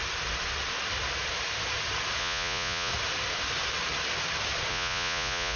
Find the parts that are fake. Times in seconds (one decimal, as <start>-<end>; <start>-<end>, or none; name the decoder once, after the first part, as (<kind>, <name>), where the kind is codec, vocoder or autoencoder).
2.2-2.9 (vocoder, Vocos); 4.7-5.6